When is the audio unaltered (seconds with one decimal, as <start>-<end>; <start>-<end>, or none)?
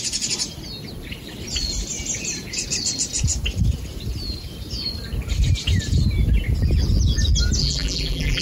0.0-7.6